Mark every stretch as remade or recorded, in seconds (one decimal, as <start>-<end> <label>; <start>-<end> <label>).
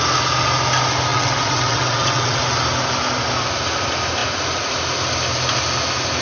0.0-1.1 recorded; 1.1-2.4 remade; 2.4-6.2 recorded